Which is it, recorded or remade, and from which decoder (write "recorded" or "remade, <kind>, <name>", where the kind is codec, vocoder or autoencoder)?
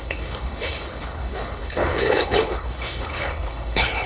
remade, codec, HILCodec